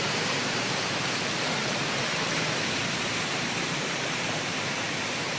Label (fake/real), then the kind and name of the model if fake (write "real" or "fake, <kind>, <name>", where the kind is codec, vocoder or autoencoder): fake, vocoder, BigVGAN v2